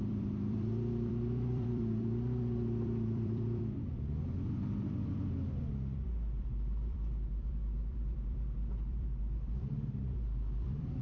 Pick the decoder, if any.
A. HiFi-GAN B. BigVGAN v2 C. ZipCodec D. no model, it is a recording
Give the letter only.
B